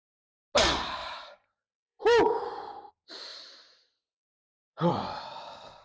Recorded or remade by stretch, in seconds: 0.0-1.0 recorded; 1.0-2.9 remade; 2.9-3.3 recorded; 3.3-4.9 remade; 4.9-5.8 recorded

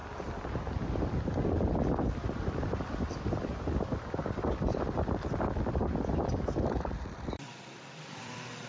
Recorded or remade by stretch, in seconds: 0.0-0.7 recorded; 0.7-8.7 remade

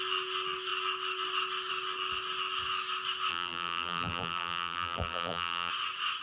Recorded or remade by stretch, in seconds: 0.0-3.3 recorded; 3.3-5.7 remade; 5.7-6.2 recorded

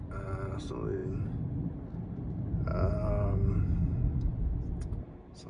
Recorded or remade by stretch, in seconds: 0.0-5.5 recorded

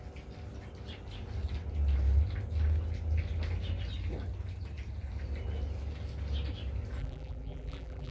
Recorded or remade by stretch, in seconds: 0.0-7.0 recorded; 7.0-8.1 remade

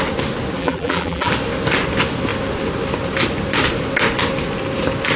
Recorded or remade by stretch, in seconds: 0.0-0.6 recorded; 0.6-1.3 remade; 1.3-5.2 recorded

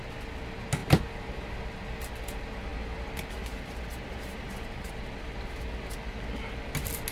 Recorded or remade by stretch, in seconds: 0.0-0.8 recorded; 0.8-1.6 remade; 1.6-7.1 recorded

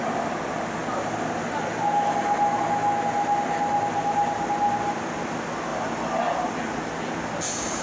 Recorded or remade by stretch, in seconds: 0.0-5.7 recorded; 5.7-6.5 remade; 6.5-7.8 recorded